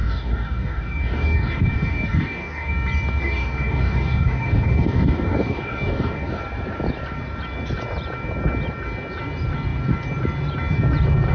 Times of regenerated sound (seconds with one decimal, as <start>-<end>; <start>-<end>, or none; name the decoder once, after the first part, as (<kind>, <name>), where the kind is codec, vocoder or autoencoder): 0.0-2.7 (codec, DAC); 3.2-6.4